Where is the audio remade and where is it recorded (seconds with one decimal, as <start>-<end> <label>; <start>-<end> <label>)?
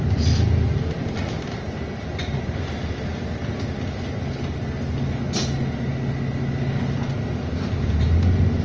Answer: 0.0-8.6 recorded